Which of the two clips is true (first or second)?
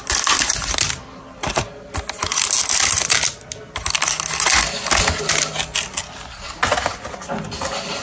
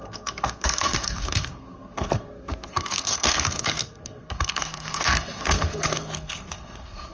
first